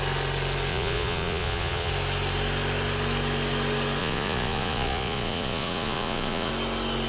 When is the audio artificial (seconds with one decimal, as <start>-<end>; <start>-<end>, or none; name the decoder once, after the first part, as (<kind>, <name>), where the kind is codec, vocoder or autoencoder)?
0.7-1.9 (vocoder, Vocos); 4.0-6.5